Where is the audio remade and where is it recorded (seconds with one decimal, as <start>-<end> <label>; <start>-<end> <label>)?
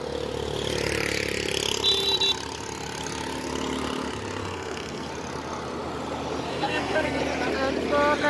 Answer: 0.0-4.4 recorded; 4.4-5.1 remade; 5.1-6.5 recorded; 6.5-7.2 remade; 7.2-8.3 recorded